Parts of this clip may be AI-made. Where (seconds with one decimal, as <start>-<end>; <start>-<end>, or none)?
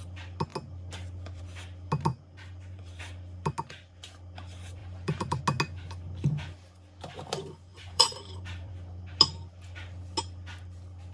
2.1-3.0; 4.8-5.4; 7.7-8.7